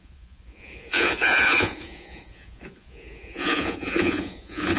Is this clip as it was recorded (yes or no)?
no